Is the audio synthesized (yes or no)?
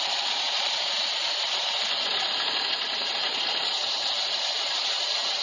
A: yes